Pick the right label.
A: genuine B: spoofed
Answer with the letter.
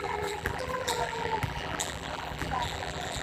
B